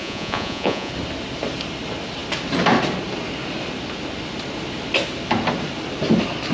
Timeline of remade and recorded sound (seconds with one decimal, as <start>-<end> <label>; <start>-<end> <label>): 0.0-0.9 remade; 0.9-6.5 recorded